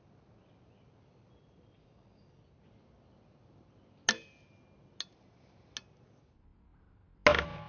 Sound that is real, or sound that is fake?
real